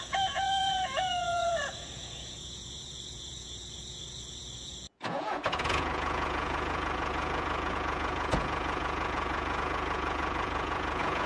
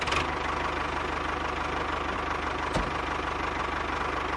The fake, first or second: first